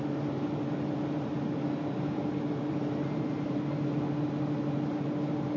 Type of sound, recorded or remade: recorded